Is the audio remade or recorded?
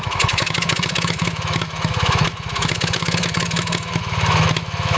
remade